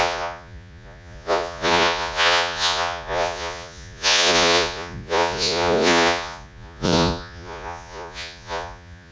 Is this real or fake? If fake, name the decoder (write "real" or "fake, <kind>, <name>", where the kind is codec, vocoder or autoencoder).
fake, vocoder, Vocos